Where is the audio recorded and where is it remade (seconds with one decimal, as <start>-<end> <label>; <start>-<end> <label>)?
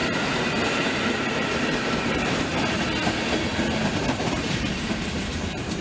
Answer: 0.0-0.8 recorded; 0.8-2.5 remade; 2.5-3.9 recorded; 3.9-5.8 remade